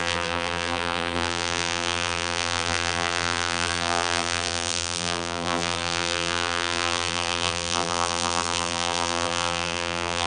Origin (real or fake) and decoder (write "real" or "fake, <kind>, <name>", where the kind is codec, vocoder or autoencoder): fake, vocoder, BigVGAN v2